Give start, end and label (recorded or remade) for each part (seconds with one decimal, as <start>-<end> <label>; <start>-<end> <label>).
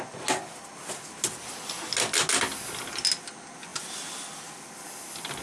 0.0-5.4 recorded